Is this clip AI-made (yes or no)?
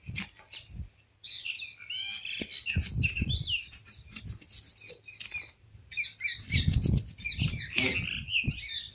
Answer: no